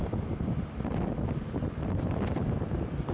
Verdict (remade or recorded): recorded